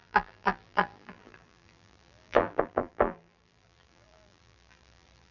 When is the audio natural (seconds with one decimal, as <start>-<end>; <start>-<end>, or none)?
none